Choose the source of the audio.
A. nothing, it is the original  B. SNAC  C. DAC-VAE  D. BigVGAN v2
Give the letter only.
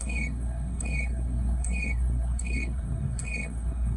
B